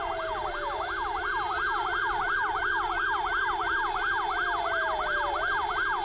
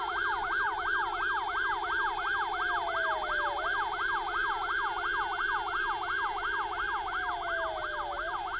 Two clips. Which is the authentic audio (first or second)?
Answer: second